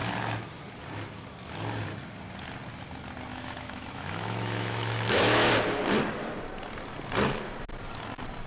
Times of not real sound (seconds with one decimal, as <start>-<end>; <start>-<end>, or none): 3.3-5.5